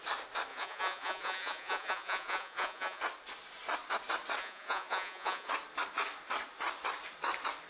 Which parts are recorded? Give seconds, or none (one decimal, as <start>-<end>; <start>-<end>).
0.0-0.5; 3.0-4.4; 5.5-7.7